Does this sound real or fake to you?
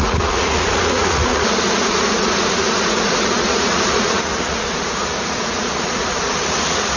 fake